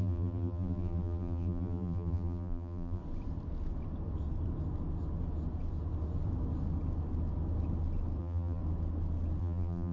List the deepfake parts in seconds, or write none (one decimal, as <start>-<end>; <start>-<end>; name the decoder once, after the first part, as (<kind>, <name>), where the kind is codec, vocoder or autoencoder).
0.0-3.0 (vocoder, BigVGAN v2); 8.2-8.6; 9.4-9.9